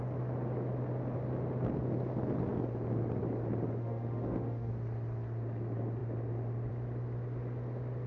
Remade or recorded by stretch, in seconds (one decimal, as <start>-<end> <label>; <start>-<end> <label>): 0.0-3.8 recorded; 3.8-4.7 remade; 4.7-8.1 recorded